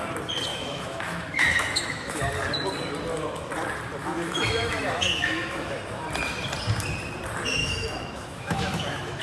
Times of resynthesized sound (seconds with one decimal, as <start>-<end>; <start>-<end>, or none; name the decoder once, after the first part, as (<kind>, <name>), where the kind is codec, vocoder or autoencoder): 0.5-2.2 (autoencoder, DAC-VAE); 4.0-6.0; 7.6-9.2